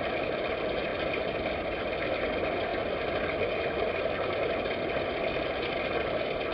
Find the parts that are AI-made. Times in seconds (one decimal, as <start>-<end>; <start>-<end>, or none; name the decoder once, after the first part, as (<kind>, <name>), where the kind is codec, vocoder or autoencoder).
0.0-6.5 (vocoder, BigVGAN v2)

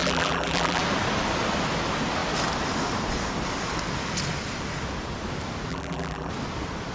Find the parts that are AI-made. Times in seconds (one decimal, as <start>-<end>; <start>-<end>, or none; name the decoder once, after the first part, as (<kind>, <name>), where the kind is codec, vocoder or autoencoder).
0.0-0.8 (vocoder, BigVGAN v2); 5.7-6.3

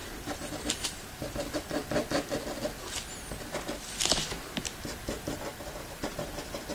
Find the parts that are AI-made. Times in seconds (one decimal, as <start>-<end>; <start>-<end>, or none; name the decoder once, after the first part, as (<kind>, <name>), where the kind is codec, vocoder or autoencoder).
0.0-1.8 (vocoder, BigVGAN v2); 4.8-6.7